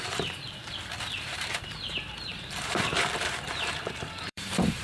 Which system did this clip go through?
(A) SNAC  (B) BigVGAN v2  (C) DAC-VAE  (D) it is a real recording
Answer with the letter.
B